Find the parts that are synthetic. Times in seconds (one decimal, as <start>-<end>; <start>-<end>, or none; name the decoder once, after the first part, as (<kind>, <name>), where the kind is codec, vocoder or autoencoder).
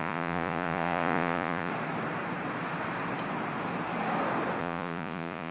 0.0-1.7 (vocoder, Vocos); 4.6-5.5